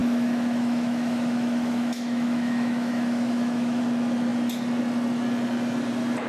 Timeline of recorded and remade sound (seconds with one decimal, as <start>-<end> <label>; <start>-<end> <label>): 0.0-3.8 remade; 3.8-6.3 recorded

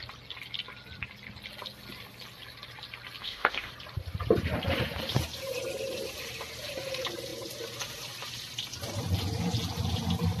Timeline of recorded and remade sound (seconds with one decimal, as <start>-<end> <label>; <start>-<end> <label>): 0.0-3.2 recorded; 3.2-3.7 remade; 3.7-10.4 recorded